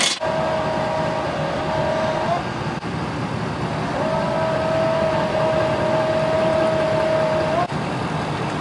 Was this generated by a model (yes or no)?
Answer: no